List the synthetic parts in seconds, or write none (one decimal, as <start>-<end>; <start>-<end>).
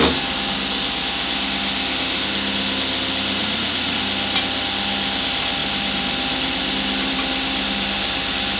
3.4-4.0